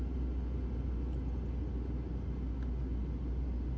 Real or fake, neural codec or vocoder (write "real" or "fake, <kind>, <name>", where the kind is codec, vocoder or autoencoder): real